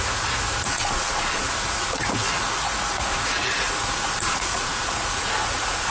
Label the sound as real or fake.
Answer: fake